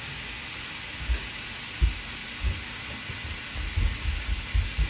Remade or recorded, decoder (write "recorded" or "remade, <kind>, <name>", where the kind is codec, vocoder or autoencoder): recorded